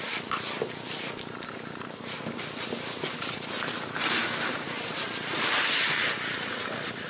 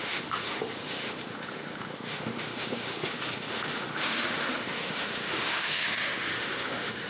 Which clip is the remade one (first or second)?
second